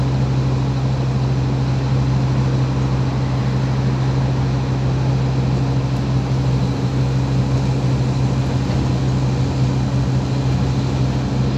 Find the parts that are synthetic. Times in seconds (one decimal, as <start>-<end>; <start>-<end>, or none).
none